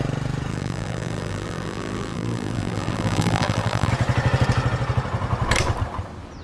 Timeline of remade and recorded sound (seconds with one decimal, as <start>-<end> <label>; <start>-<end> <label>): 0.0-0.5 recorded; 0.5-3.9 remade; 3.9-6.4 recorded